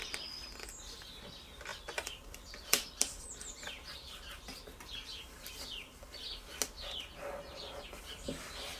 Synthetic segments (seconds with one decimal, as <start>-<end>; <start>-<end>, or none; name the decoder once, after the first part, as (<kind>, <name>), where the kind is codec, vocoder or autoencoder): 1.7-5.2 (vocoder, BigVGAN v2); 7.5-8.4